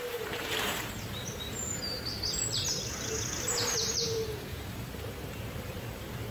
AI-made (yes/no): yes